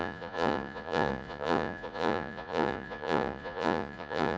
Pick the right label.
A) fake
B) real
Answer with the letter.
A